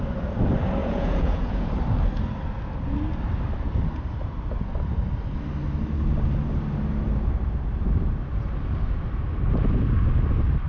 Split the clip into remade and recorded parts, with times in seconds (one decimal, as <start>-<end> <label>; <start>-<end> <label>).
0.0-0.8 recorded; 0.8-1.7 remade; 1.7-10.7 recorded